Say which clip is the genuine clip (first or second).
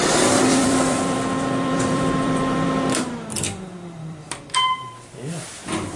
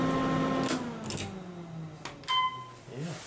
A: second